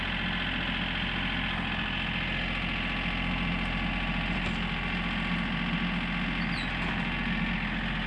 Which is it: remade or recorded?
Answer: recorded